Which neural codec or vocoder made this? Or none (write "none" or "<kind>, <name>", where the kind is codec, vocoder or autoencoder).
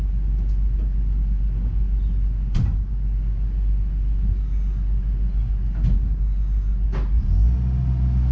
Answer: none